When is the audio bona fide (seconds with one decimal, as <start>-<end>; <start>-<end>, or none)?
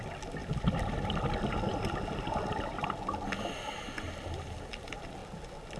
0.0-5.8